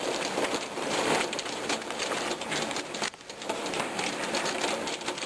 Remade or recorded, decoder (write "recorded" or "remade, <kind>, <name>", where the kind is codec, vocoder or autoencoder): remade, vocoder, BigVGAN v2